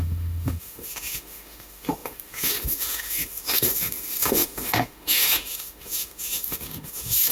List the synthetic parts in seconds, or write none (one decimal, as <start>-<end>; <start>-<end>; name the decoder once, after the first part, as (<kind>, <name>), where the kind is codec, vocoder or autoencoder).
0.0-7.3 (autoencoder, DAC-VAE)